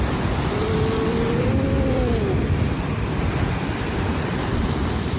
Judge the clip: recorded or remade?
remade